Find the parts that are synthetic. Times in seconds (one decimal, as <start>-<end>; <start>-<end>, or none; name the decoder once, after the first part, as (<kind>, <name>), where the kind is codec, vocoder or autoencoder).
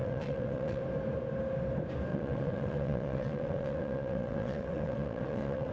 0.0-0.8 (vocoder, WaveNeXt); 2.1-5.7